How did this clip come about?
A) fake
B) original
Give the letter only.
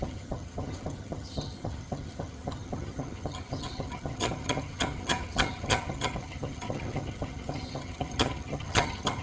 A